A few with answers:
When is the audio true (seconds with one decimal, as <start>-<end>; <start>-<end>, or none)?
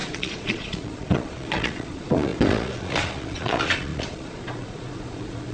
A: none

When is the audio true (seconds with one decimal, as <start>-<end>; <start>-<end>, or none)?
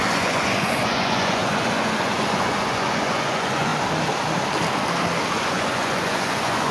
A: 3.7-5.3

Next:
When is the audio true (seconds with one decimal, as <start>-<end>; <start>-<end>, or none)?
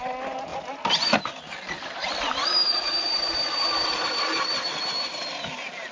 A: 0.0-5.9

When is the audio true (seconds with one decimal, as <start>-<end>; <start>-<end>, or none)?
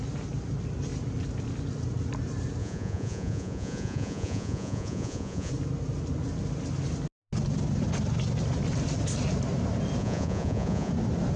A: 0.0-2.6; 5.5-10.0; 10.9-11.4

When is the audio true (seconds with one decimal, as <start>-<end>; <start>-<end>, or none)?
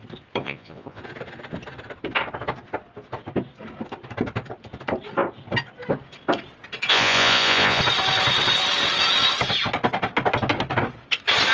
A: 0.0-0.4; 1.0-6.9; 7.8-11.5